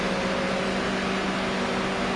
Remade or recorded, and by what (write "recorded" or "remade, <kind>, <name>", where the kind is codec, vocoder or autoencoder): recorded